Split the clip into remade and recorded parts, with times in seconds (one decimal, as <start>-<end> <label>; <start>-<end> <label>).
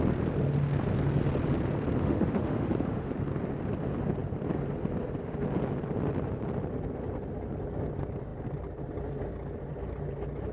0.0-2.0 recorded; 2.0-3.1 remade; 3.1-10.5 recorded